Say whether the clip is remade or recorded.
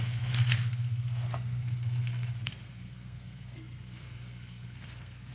remade